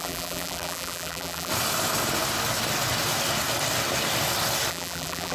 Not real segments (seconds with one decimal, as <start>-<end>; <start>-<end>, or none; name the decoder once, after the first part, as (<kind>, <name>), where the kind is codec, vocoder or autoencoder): 0.0-1.5 (vocoder, BigVGAN v2); 4.7-5.3